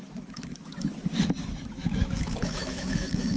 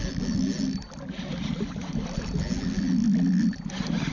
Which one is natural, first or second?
second